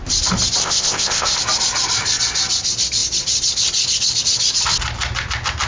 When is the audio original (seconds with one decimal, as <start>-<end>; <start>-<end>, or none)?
0.0-0.6; 1.4-5.7